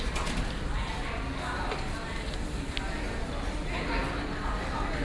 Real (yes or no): yes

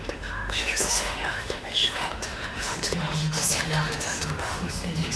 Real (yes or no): no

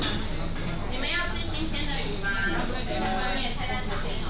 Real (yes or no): yes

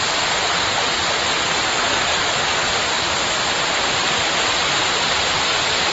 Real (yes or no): yes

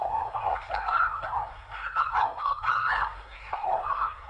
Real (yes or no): no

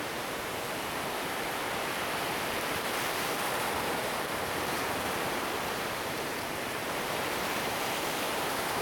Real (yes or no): no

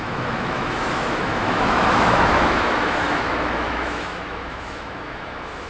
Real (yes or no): no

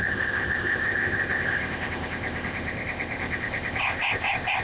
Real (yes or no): no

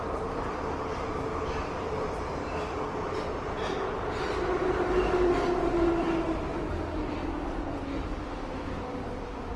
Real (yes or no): yes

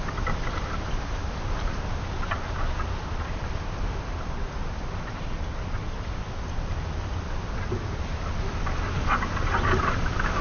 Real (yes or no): yes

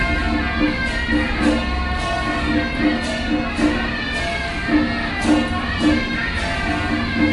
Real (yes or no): yes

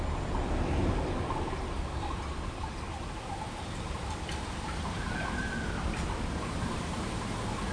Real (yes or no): yes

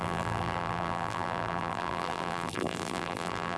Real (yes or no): no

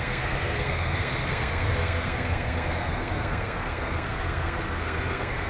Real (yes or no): no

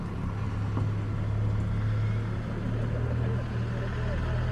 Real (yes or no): yes